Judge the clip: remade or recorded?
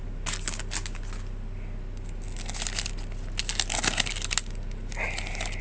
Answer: recorded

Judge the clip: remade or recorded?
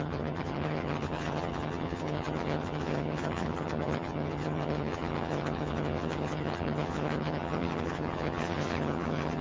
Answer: remade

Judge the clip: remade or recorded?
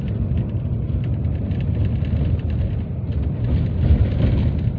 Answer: recorded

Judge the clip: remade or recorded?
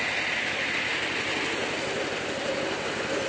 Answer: recorded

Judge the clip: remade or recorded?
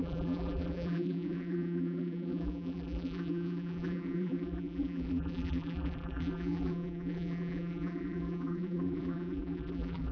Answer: remade